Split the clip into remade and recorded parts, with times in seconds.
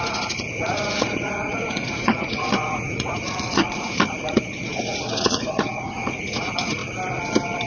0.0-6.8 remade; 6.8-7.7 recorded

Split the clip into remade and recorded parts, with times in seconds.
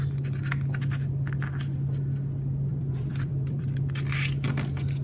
0.0-2.7 recorded; 2.7-3.9 remade; 3.9-5.0 recorded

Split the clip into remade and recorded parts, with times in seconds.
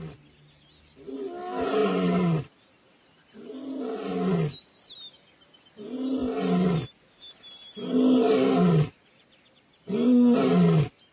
0.0-11.1 recorded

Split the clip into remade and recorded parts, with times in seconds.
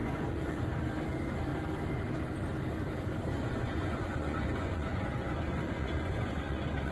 0.0-0.7 remade; 0.7-3.3 recorded; 3.3-6.9 remade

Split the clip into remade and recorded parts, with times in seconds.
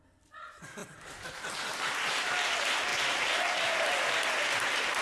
0.0-5.0 recorded